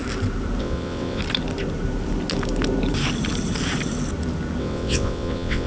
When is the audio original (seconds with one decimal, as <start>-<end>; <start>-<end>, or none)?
0.0-0.6; 1.2-4.6